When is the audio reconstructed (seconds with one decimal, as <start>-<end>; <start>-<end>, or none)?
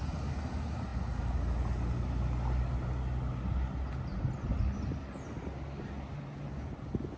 none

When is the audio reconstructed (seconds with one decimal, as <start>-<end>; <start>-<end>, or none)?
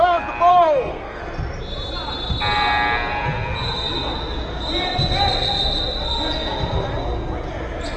0.5-1.2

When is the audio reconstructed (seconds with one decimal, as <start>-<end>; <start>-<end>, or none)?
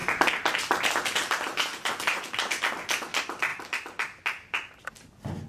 0.0-1.0; 1.7-2.6